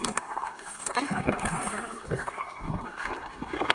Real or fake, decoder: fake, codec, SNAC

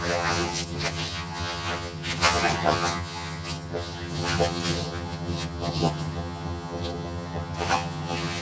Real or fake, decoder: fake, vocoder, HiFi-GAN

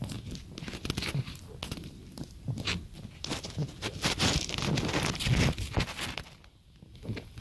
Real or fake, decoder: real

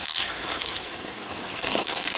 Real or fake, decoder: fake, codec, SNAC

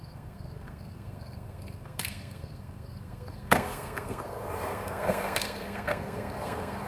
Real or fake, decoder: fake, codec, SNAC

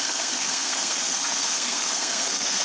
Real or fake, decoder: fake, codec, SNAC